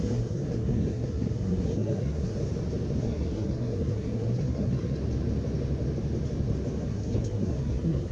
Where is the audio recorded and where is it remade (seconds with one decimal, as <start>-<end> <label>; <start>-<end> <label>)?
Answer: 0.0-2.4 remade; 2.4-3.0 recorded; 3.0-5.0 remade; 5.0-6.8 recorded; 6.8-8.1 remade

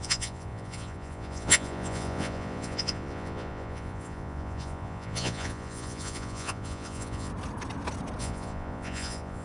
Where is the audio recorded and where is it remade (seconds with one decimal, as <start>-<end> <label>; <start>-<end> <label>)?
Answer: 0.0-7.3 remade; 7.3-8.2 recorded; 8.2-9.4 remade

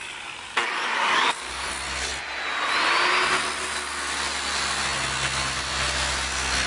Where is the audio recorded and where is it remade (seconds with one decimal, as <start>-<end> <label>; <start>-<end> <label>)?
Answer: 0.0-0.8 recorded; 0.8-1.7 remade; 1.7-6.7 recorded

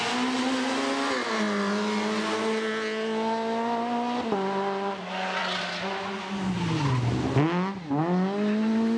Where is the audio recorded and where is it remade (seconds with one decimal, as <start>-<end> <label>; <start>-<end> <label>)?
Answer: 0.0-9.0 recorded

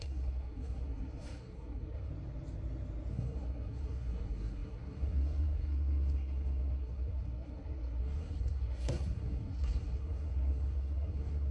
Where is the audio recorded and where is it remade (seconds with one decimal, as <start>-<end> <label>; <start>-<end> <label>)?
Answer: 0.0-2.1 remade; 2.1-3.1 recorded; 3.1-11.5 remade